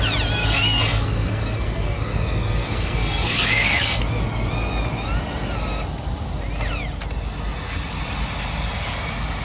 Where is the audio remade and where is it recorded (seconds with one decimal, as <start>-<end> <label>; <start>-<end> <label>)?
0.0-0.4 recorded; 0.4-4.0 remade; 4.0-9.4 recorded